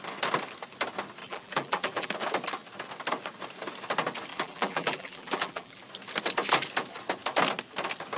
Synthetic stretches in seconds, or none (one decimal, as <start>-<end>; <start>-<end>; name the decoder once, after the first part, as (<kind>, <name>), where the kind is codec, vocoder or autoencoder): 1.2-2.1 (vocoder, BigVGAN v2); 4.3-5.8